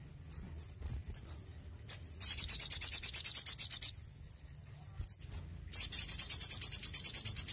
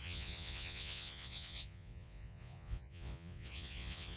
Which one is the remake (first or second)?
second